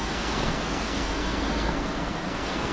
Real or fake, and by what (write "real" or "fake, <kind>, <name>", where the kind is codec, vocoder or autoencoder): fake, codec, SNAC